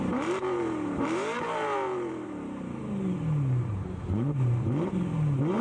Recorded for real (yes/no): no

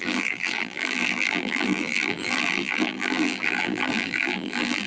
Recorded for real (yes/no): no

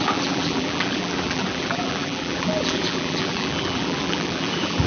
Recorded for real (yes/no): no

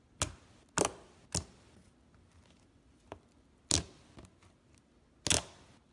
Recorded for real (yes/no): yes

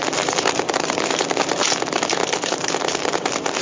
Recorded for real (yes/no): no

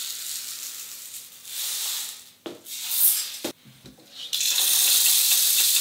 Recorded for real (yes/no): yes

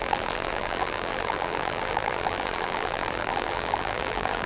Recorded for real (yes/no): no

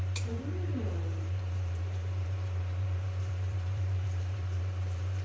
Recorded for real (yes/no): no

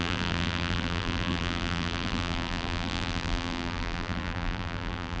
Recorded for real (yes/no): no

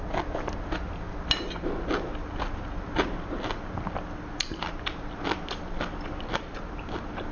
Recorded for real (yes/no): yes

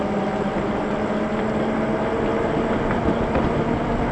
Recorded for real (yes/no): yes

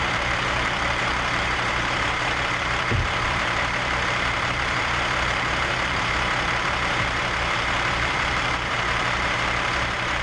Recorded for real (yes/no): no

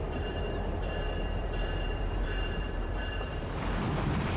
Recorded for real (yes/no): no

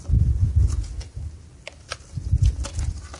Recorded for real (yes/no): yes